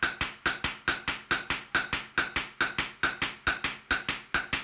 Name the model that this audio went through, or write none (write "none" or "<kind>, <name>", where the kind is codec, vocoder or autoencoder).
none